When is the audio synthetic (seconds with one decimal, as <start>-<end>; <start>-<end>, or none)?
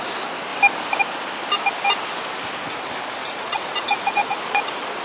3.2-4.6